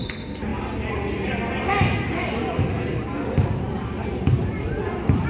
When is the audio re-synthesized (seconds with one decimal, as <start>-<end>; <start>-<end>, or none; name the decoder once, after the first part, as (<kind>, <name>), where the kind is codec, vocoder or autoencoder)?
none